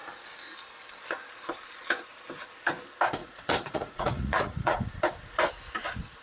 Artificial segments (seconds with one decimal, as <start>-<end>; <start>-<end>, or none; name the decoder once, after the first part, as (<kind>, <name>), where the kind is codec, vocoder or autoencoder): 3.2-5.0 (vocoder, Vocos)